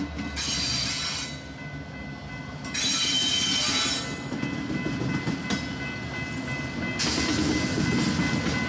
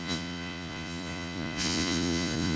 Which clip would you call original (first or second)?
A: first